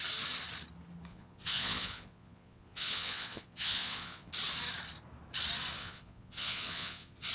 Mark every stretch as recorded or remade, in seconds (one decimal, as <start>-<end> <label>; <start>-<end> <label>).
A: 0.0-1.1 recorded; 1.1-4.3 remade; 4.3-5.8 recorded; 5.8-7.3 remade